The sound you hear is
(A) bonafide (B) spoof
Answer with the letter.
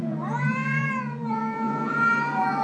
B